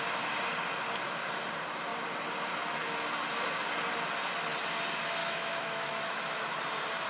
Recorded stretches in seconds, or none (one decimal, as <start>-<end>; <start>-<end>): 0.0-5.2; 6.6-7.1